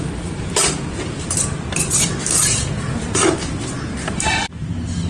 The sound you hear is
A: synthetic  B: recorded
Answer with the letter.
A